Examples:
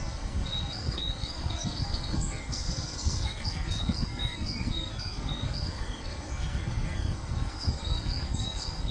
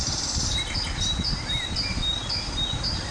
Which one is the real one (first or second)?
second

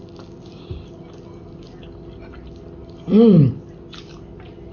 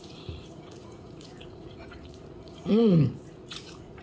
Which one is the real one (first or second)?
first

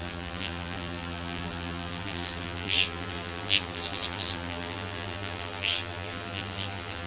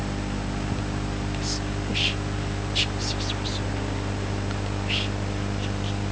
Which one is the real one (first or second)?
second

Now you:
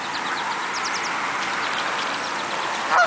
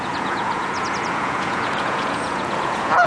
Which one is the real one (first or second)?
first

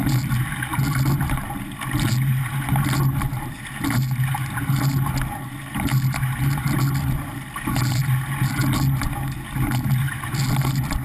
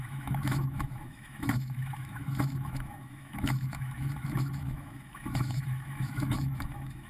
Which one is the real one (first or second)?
first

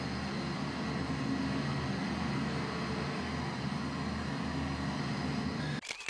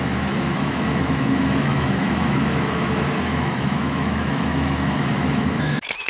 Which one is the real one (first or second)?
first